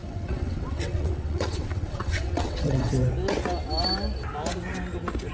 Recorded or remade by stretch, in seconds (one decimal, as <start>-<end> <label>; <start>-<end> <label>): 0.0-2.9 remade; 2.9-5.3 recorded